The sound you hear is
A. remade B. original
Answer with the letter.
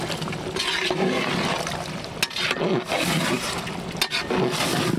B